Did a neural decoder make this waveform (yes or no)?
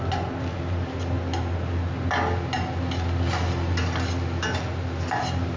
no